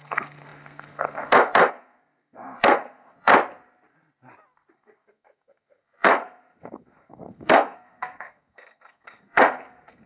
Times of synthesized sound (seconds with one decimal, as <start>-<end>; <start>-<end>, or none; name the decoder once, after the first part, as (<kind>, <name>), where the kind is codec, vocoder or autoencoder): 0.0-3.3 (codec, SNAC); 4.7-10.1